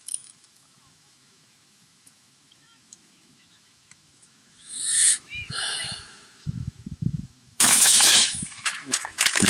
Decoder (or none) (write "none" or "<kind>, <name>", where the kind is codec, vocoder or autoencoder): autoencoder, DAC-VAE